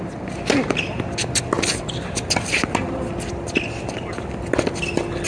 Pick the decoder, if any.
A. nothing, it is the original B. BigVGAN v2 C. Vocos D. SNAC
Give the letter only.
A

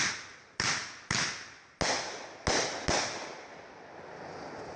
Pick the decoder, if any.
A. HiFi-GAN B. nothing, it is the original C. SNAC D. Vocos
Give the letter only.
B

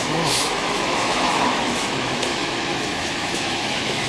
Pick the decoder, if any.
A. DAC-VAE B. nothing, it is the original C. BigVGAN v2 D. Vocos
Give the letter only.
A